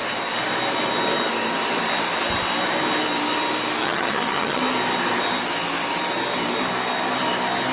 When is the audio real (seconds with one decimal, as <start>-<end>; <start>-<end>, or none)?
0.0-3.8; 4.6-7.7